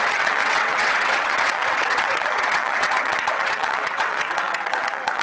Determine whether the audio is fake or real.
fake